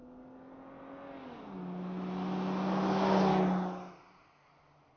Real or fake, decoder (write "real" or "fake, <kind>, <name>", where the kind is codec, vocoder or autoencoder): real